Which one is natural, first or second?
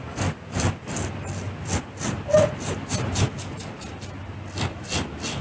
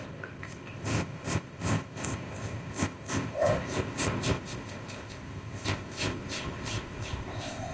first